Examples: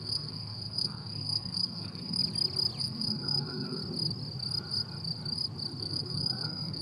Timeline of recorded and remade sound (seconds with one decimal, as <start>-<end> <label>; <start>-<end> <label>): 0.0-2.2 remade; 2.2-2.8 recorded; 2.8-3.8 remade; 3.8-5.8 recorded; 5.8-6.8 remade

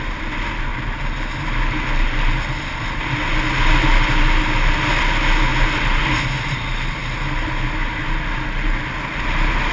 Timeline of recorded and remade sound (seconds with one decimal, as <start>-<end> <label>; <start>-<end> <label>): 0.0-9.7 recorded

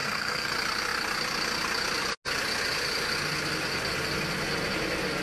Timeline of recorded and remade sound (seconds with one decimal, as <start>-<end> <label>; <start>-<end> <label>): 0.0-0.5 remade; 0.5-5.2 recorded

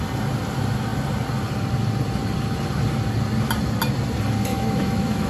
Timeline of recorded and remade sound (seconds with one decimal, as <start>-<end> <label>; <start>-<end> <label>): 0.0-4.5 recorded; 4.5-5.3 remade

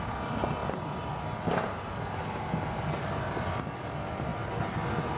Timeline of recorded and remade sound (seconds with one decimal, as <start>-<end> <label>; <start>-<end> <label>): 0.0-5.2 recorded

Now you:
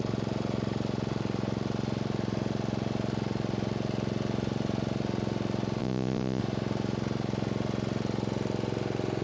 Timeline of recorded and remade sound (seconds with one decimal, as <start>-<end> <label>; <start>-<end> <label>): 0.0-5.8 recorded; 5.8-6.4 remade; 6.4-9.2 recorded

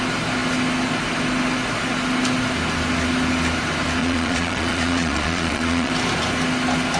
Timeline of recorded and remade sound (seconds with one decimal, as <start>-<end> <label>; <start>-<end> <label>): 0.0-4.0 recorded; 4.0-5.9 remade; 5.9-7.0 recorded